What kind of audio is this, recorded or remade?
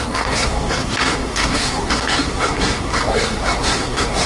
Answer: remade